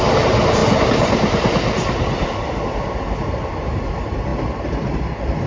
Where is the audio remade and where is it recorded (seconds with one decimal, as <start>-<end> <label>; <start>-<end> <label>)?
0.0-5.5 recorded